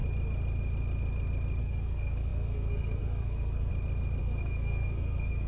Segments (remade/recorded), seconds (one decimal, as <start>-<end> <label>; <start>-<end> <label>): 0.0-1.6 recorded; 1.6-3.7 remade; 3.7-4.2 recorded; 4.2-5.5 remade